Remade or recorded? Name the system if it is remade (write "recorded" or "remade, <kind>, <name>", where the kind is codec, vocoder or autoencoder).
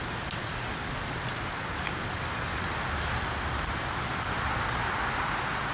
recorded